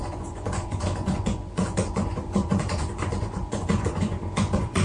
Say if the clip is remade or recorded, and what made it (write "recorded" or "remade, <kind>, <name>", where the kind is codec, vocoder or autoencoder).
remade, vocoder, Vocos